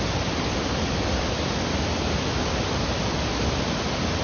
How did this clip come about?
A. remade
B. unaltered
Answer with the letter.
B